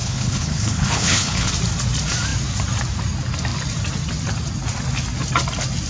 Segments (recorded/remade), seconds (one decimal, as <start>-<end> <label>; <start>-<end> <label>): 0.0-1.5 remade; 1.5-5.9 recorded